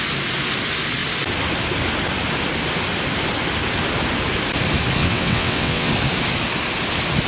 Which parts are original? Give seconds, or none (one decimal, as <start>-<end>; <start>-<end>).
0.0-5.0; 5.9-7.3